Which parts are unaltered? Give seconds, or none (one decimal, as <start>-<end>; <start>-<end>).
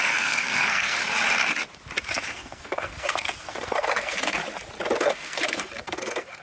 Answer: 1.0-2.0; 4.4-5.0